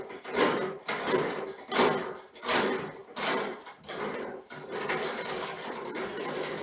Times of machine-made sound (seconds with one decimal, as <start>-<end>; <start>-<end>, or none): 3.0-6.1